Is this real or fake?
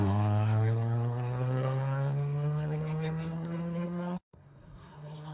fake